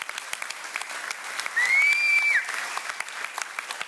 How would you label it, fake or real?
real